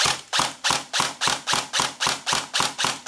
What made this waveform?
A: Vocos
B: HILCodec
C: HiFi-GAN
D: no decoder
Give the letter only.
D